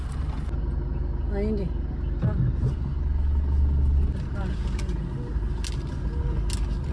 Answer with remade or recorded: recorded